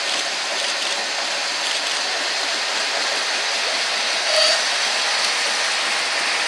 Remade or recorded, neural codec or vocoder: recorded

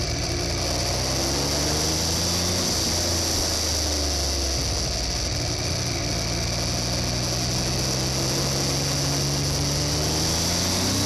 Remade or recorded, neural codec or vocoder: recorded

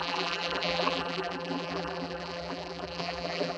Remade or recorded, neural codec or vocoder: remade, vocoder, BigVGAN v2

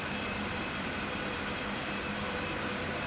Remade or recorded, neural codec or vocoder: remade, vocoder, BigVGAN v2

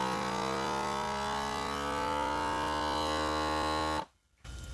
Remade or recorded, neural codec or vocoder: recorded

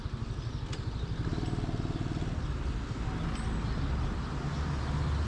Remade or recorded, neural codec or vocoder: recorded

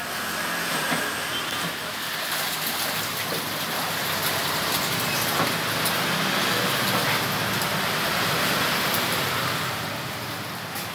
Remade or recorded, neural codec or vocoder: recorded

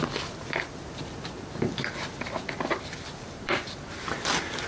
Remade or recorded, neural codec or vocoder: remade, vocoder, BigVGAN v2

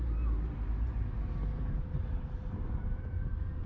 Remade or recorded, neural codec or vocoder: remade, vocoder, BigVGAN v2